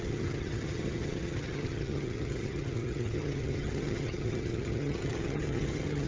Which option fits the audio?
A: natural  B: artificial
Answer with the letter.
B